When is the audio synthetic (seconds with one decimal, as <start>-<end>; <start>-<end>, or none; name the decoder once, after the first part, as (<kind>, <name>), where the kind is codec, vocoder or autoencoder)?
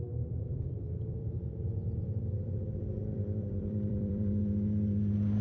1.2-4.4 (vocoder, BigVGAN v2)